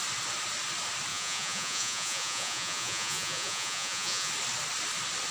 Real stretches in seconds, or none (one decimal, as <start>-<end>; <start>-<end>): 0.0-1.1; 4.3-5.3

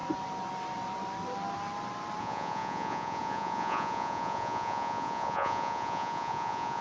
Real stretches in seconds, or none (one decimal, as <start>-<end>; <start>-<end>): 0.0-2.2

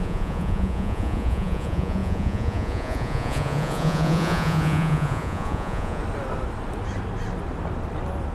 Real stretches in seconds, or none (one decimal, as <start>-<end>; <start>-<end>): 6.0-8.3

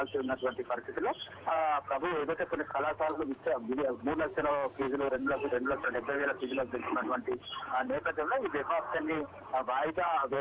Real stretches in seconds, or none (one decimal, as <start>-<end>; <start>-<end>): none

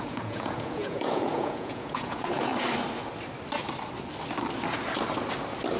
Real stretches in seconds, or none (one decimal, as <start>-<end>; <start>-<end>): 2.5-5.8

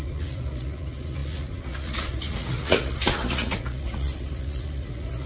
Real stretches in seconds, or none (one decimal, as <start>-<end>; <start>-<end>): none

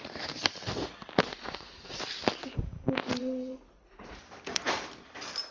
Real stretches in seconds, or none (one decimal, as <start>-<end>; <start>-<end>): 0.0-1.3; 2.0-3.2; 4.2-5.5